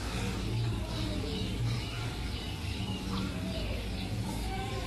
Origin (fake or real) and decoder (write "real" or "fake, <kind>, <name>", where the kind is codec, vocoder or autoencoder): fake, codec, DAC